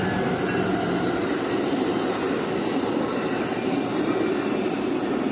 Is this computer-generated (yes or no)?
no